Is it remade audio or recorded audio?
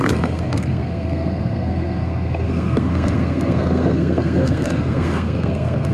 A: remade